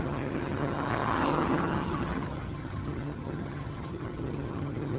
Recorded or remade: remade